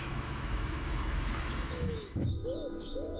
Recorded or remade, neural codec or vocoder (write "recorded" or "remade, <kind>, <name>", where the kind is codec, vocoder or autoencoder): remade, autoencoder, DAC-VAE